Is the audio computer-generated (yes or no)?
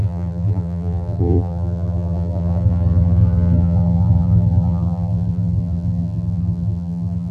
yes